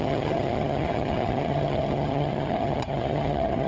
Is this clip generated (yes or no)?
yes